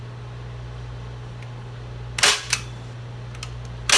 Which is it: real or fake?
real